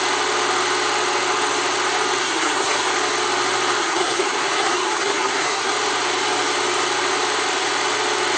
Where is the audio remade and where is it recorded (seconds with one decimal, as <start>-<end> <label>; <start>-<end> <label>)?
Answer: 0.0-2.2 recorded; 2.2-2.9 remade; 2.9-3.8 recorded; 3.8-5.7 remade; 5.7-8.4 recorded